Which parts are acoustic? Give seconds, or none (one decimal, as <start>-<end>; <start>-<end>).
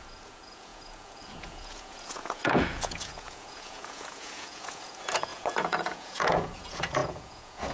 none